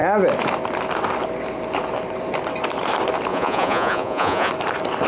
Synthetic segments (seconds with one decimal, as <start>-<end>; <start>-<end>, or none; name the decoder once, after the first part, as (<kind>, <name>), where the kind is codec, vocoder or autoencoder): 3.3-4.5 (vocoder, Vocos)